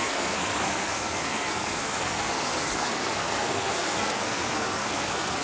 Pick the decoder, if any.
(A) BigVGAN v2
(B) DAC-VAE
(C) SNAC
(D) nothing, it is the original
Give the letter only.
C